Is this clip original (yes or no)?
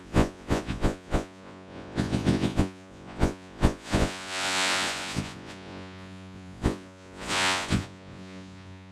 no